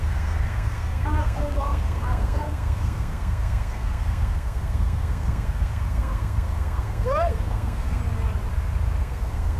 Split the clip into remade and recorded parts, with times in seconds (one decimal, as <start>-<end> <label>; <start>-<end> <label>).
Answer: 0.0-8.0 remade; 8.0-9.0 recorded; 9.0-9.6 remade